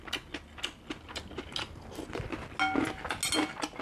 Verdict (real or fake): real